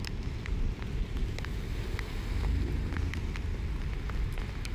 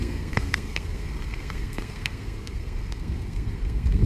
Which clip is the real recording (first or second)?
first